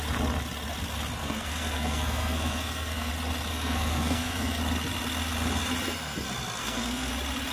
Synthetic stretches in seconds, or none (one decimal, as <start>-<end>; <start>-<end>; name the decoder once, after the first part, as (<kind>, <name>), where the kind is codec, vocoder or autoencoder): 1.2-3.1 (codec, SNAC); 3.5-4.6; 6.6-7.1